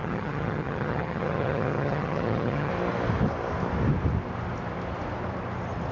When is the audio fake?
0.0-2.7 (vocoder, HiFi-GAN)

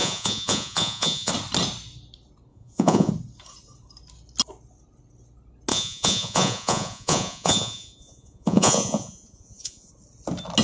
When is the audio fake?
0.0-1.3 (vocoder, Vocos); 2.5-3.1; 5.7-9.9

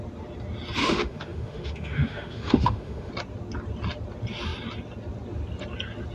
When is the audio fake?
0.8-3.1 (autoencoder, DAC-VAE)

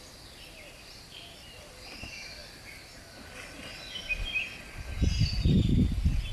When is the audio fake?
none

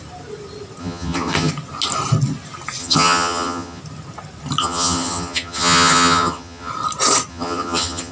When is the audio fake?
0.8-1.5 (vocoder, HiFi-GAN); 2.8-3.8; 4.6-6.7; 7.3-8.1

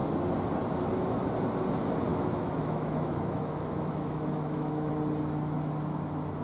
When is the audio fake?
2.1-4.9 (autoencoder, DAC-VAE)